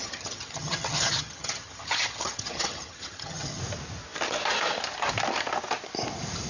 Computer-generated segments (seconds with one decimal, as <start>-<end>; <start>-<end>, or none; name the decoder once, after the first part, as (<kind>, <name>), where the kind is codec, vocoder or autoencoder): 0.0-3.6 (vocoder, HiFi-GAN)